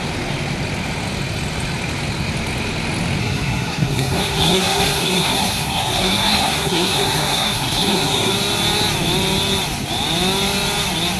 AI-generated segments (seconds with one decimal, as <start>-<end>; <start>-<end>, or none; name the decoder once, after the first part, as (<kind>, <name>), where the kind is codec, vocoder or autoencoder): 3.2-8.3 (codec, SNAC)